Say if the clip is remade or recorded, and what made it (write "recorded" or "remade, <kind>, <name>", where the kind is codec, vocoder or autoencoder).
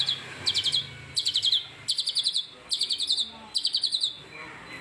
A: recorded